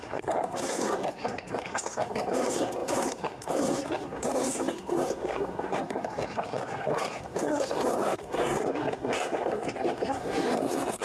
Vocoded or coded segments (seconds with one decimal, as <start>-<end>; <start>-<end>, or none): 0.0-11.0